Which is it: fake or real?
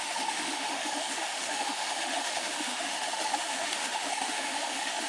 fake